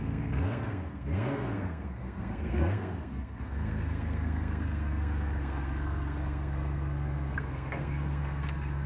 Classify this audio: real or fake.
fake